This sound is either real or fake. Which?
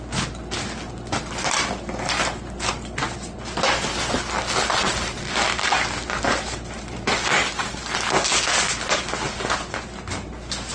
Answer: real